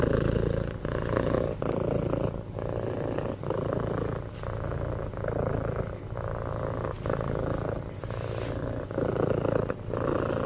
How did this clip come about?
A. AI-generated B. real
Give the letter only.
B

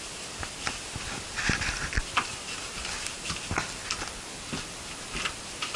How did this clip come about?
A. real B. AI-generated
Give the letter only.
A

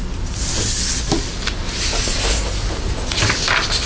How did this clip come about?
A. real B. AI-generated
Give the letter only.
A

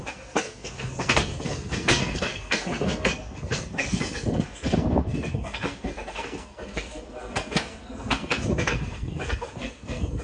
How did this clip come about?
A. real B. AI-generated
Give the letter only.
B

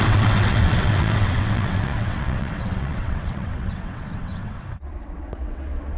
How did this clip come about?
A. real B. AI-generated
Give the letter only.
B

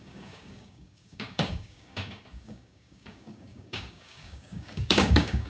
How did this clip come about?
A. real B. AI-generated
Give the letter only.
B